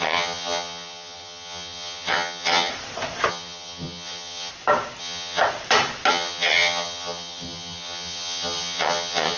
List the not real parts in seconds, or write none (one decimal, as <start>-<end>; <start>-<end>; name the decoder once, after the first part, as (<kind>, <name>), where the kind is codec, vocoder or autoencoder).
0.0-2.7 (vocoder, HiFi-GAN); 3.3-4.5; 5.0-5.4; 6.1-9.4